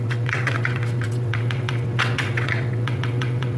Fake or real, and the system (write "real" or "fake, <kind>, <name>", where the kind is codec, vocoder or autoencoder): fake, vocoder, WaveNeXt